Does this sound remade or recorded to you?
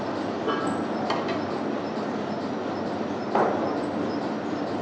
recorded